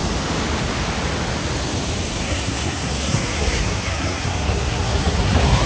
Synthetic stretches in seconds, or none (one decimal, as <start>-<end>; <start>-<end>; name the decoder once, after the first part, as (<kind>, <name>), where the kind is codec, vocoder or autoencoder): 2.1-5.7 (codec, SNAC)